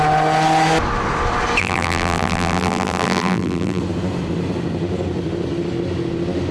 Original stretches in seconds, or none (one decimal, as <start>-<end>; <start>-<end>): 0.0-1.6; 3.8-6.5